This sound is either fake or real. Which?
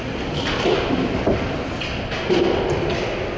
real